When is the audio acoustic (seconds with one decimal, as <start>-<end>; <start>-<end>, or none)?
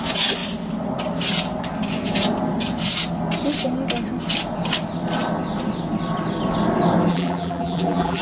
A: 0.0-7.1